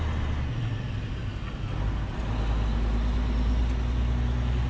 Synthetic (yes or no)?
no